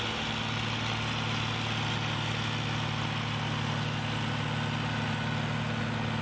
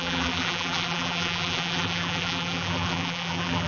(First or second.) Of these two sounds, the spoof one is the second